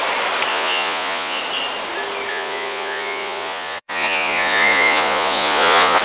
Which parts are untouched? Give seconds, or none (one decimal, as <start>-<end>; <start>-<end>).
0.0-0.5; 1.4-2.3